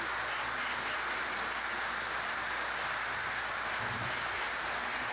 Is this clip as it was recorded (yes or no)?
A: yes